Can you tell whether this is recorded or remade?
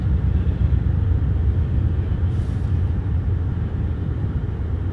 recorded